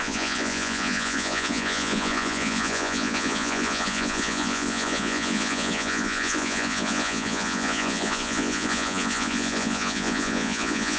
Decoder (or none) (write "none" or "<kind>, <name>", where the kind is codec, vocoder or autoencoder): vocoder, Vocos